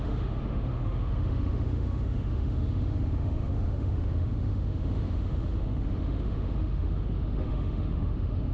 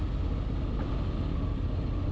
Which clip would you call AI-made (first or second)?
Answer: first